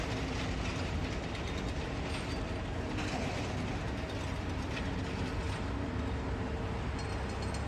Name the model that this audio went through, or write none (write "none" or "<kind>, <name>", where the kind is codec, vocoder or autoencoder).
none